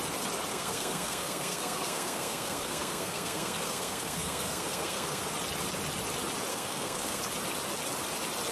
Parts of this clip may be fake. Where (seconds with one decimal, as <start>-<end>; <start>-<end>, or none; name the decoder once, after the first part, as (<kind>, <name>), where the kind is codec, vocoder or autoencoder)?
0.5-5.2 (codec, SNAC); 6.5-7.2